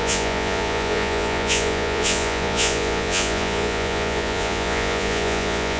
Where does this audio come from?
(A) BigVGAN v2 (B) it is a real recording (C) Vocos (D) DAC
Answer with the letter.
C